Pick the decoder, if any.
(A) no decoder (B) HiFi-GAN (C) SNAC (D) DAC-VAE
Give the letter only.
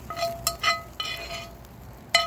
A